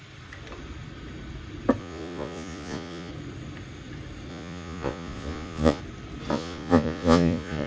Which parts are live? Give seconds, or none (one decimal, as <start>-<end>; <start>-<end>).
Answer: 0.0-1.8; 3.1-4.3; 5.8-6.3